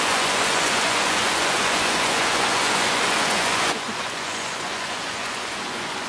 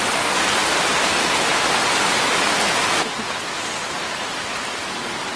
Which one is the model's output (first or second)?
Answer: first